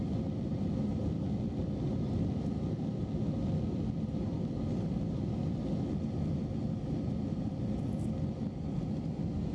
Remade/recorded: recorded